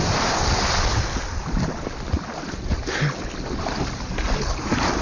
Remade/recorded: recorded